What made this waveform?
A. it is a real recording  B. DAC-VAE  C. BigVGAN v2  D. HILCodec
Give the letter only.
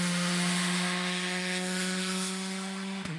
B